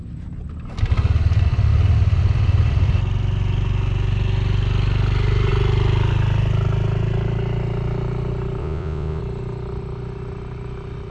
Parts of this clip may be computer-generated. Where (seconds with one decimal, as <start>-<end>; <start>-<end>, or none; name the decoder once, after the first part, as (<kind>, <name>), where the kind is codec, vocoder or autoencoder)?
8.6-9.2 (vocoder, Vocos)